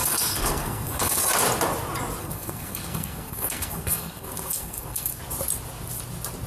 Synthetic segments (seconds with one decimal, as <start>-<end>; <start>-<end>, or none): 0.0-1.2; 2.2-5.2